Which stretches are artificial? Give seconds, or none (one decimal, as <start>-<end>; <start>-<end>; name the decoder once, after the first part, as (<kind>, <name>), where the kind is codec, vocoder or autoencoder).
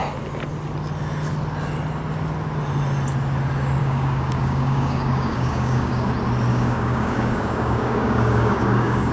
3.8-6.1 (codec, DAC); 6.5-9.1